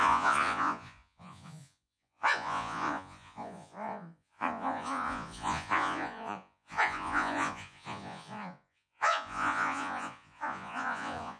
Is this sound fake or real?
fake